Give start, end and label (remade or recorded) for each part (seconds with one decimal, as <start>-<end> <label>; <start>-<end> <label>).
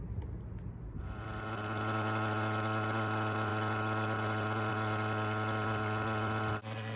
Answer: 0.0-7.0 recorded